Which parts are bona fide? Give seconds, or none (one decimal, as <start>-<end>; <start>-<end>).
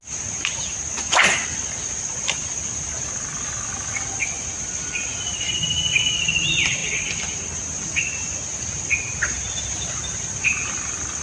0.0-11.2